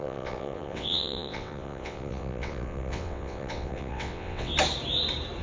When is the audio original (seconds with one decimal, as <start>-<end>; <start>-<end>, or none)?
4.5-5.4